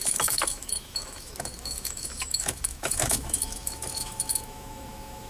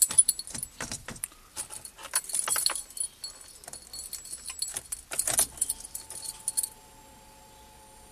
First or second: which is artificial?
first